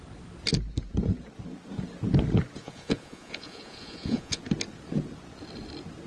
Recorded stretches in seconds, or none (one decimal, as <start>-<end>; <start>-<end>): 0.0-2.6; 4.4-6.1